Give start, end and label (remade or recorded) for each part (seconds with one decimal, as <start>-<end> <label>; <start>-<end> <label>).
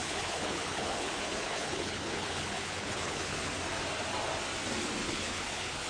0.0-3.5 remade; 3.5-5.0 recorded; 5.0-5.9 remade